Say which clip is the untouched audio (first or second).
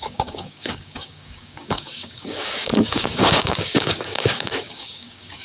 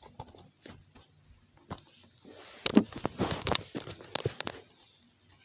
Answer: second